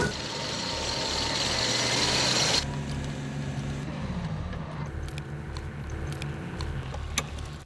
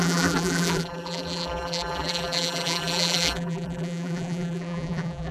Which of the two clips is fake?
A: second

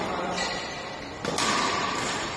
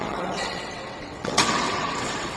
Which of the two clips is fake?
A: second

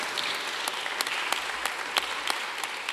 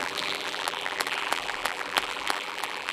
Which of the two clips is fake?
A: second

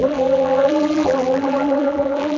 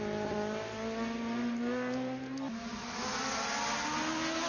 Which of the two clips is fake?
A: first